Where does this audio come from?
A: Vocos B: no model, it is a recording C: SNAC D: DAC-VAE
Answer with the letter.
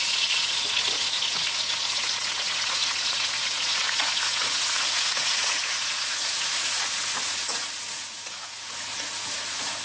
A